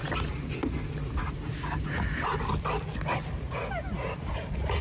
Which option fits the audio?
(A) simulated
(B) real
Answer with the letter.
B